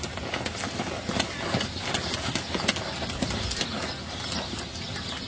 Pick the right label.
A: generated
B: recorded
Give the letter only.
B